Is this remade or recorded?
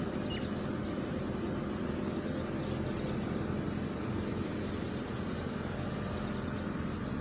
recorded